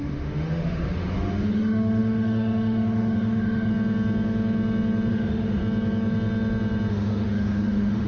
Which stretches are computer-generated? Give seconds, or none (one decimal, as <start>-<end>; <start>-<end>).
0.0-3.7; 5.1-5.6; 6.9-8.1